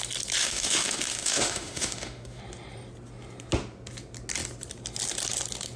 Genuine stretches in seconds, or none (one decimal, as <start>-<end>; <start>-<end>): 0.0-0.4; 2.4-5.8

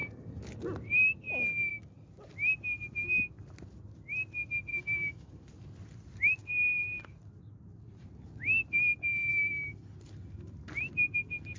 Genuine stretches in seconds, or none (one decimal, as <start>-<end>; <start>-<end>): 0.0-4.7; 5.3-11.6

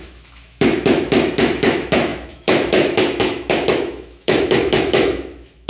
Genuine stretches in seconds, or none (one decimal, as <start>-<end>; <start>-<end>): none

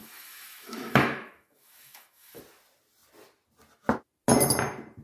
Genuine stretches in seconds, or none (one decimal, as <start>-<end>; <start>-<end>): 2.4-5.0

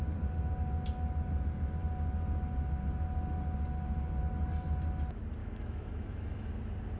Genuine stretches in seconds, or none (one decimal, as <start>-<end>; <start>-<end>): 0.0-5.4; 6.5-7.0

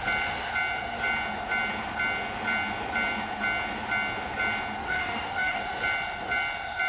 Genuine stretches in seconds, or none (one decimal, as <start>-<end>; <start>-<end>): 0.0-4.8; 5.6-6.9

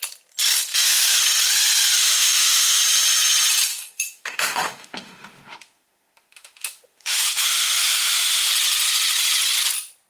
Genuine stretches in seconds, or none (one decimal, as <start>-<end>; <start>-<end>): 0.0-0.7; 1.2-2.0; 2.8-3.7; 8.5-10.1

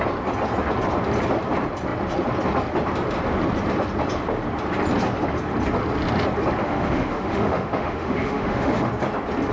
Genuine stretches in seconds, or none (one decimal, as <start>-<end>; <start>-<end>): 0.0-6.6; 8.9-9.5